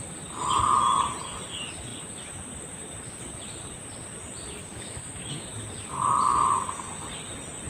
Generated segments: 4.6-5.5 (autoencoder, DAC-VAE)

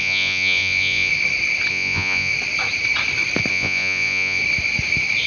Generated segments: 0.0-1.1 (vocoder, Vocos); 1.7-2.3; 3.5-4.4

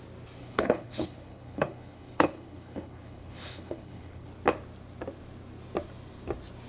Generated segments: 0.4-4.3 (codec, HILCodec)

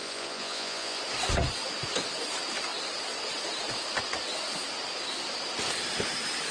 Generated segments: 0.0-1.0 (vocoder, Vocos)